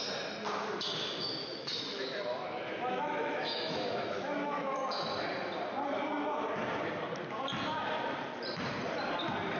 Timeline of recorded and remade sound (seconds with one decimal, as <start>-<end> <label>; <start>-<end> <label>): 0.0-1.4 recorded; 1.4-5.1 remade; 5.1-9.6 recorded